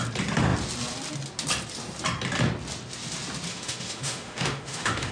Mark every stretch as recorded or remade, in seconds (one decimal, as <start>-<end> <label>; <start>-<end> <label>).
0.0-3.5 recorded; 3.5-5.1 remade